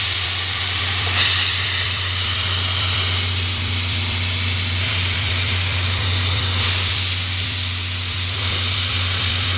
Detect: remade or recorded remade